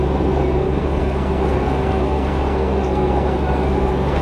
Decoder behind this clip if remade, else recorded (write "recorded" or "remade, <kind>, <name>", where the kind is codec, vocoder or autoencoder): remade, codec, SNAC